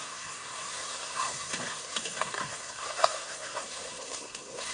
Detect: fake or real fake